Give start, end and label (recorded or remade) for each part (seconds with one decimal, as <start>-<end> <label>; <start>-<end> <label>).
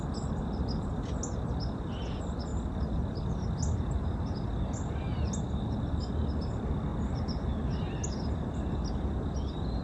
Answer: 0.0-9.8 recorded